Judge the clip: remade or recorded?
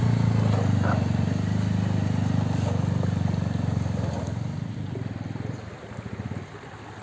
recorded